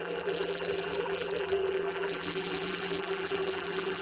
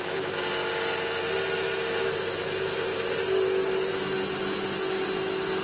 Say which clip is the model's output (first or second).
first